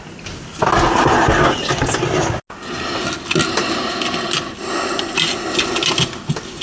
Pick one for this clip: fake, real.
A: real